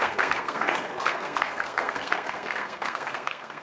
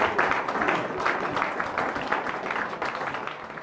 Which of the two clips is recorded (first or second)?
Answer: second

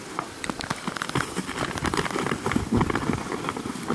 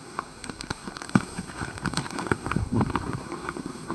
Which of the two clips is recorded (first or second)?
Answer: first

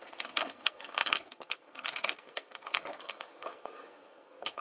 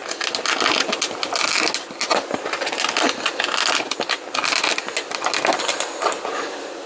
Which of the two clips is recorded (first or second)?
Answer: second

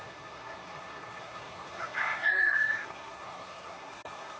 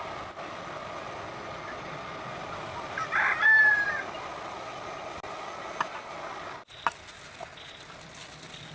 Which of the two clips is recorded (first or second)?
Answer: second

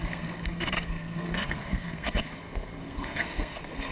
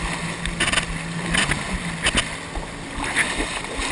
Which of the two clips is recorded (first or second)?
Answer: second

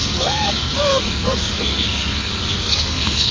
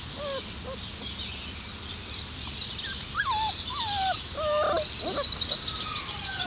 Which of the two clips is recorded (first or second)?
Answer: second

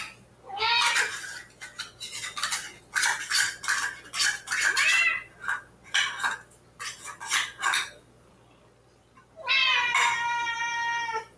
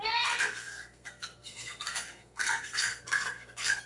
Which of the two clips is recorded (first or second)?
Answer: first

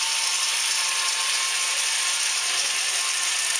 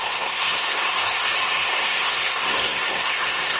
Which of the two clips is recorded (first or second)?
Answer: first